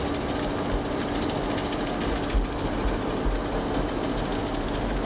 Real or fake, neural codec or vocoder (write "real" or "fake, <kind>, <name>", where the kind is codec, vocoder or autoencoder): real